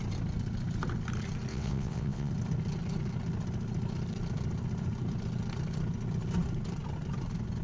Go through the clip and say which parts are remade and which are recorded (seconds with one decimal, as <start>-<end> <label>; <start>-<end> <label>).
0.0-1.5 recorded; 1.5-2.3 remade; 2.3-7.6 recorded